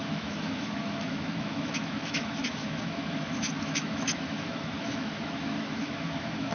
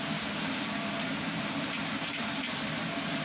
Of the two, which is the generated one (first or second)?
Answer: first